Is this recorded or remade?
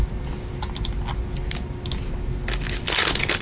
recorded